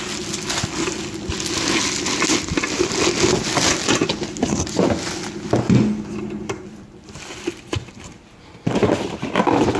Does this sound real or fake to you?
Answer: real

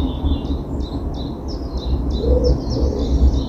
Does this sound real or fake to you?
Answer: real